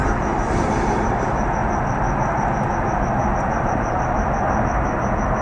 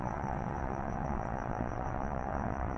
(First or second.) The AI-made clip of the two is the second